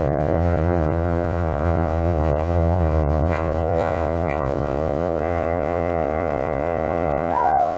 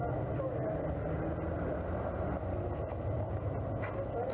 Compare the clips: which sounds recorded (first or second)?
second